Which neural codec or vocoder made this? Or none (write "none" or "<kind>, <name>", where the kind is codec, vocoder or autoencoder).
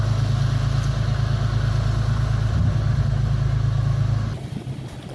none